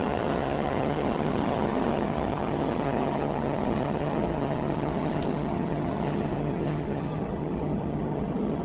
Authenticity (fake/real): fake